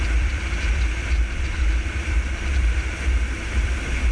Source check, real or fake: fake